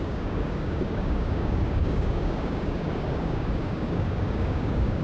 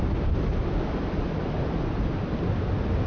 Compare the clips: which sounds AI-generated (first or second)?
first